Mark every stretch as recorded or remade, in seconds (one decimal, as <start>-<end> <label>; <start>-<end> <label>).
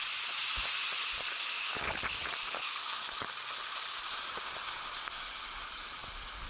0.0-6.5 recorded